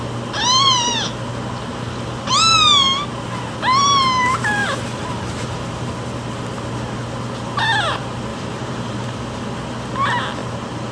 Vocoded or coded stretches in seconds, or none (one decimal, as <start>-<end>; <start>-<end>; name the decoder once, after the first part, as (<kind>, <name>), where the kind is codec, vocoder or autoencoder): 1.7-2.5 (vocoder, BigVGAN v2); 4.6-5.9; 8.3-9.2